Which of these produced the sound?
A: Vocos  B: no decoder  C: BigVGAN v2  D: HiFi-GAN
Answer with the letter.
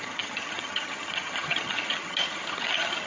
D